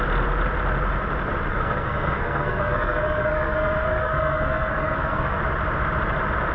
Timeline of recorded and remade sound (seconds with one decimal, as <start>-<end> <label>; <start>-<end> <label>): 0.0-1.5 recorded; 1.5-5.4 remade; 5.4-6.5 recorded